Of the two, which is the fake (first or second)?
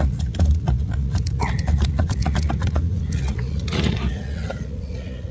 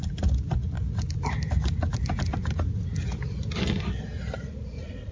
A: first